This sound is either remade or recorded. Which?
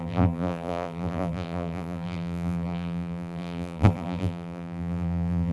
remade